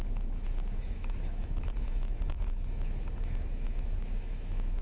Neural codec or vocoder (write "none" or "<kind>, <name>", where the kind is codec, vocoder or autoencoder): autoencoder, DAC-VAE